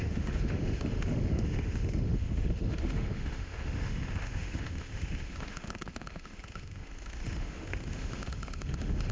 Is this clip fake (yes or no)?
yes